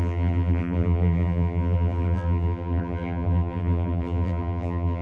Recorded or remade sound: remade